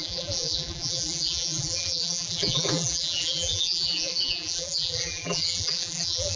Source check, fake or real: fake